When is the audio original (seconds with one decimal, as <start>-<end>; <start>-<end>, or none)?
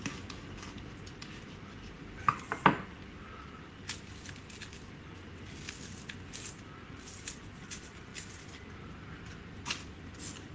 0.0-10.5